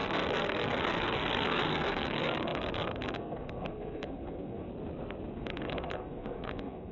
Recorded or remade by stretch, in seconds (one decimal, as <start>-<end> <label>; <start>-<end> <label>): 0.0-4.7 remade; 4.7-5.3 recorded; 5.3-6.9 remade